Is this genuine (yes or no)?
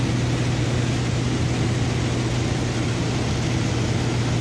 yes